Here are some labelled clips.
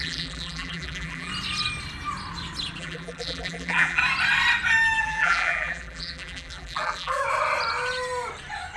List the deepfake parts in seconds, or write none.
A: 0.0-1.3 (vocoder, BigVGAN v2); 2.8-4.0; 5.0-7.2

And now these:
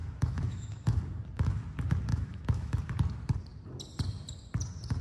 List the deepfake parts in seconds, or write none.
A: 0.0-1.0 (autoencoder, DAC-VAE); 2.1-2.8

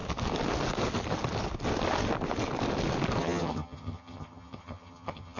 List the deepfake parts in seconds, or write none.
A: 3.2-5.4 (vocoder, HiFi-GAN)

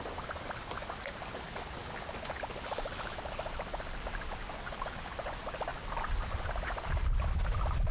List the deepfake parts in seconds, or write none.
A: none

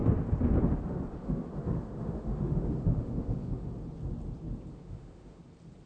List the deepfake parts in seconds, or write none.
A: 1.1-3.7 (autoencoder, DAC-VAE); 4.7-5.4

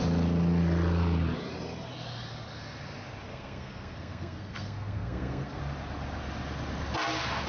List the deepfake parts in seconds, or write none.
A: 3.3-5.6 (codec, SNAC)

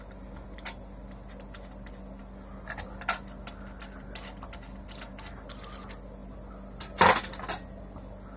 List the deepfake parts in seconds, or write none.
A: none

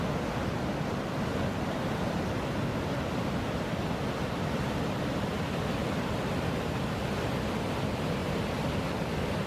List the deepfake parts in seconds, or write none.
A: 5.8-7.2 (vocoder, BigVGAN v2)